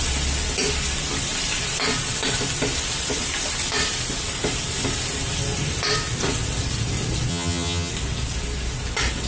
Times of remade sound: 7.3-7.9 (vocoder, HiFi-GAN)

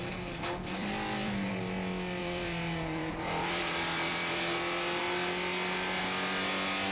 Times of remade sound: 0.8-1.5 (vocoder, BigVGAN v2); 2.2-4.4

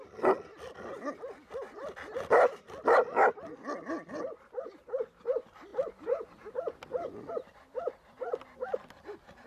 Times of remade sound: none

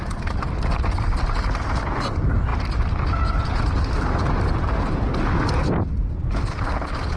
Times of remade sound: none

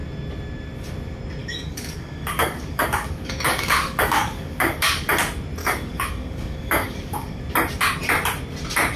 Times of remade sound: 1.4-5.1 (codec, DAC); 5.6-7.4

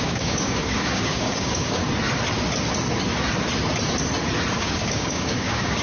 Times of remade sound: 0.0-1.8 (codec, DAC); 4.5-5.8

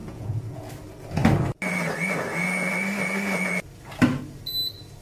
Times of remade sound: 0.0-0.7 (vocoder, Vocos)

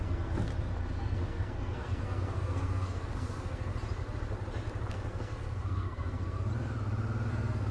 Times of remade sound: 0.0-0.5 (codec, SNAC); 1.0-3.7; 4.9-6.5; 7.3-7.7